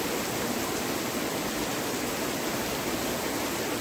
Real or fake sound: real